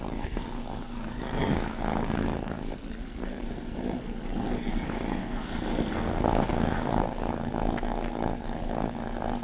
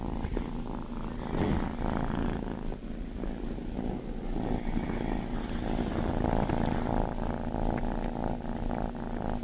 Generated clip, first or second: first